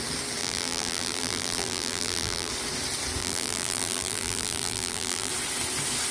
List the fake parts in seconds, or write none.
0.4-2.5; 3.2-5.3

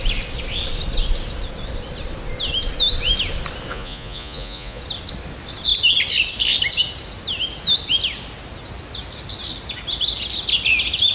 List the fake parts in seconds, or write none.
3.7-4.8